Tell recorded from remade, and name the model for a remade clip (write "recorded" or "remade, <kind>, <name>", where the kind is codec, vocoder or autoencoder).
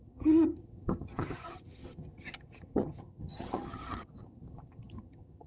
remade, vocoder, HiFi-GAN